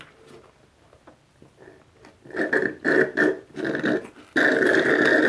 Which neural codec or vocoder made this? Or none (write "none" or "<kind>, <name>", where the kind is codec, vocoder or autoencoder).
none